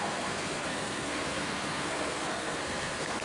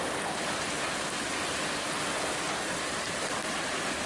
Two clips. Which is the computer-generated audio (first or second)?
first